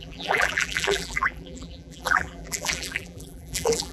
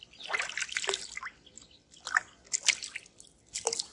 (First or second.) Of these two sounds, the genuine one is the second